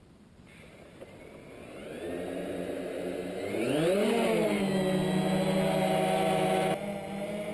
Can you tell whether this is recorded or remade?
recorded